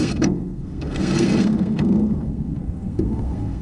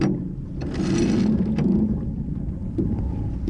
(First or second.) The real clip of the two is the second